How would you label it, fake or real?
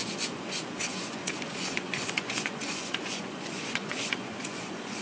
fake